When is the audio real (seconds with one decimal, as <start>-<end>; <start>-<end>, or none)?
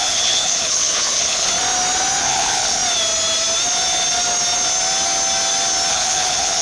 1.5-2.2; 2.8-5.9